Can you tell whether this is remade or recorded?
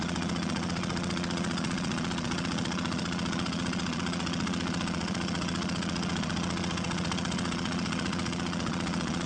remade